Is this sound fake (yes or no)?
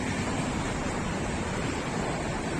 no